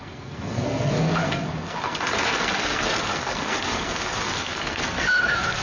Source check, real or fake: fake